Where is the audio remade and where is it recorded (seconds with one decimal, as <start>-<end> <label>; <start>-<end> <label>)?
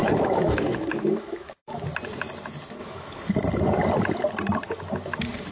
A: 0.0-1.8 remade; 1.8-2.8 recorded; 2.8-3.3 remade; 3.3-5.5 recorded